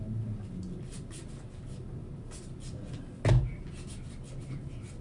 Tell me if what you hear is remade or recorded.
recorded